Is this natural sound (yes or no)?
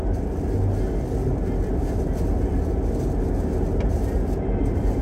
yes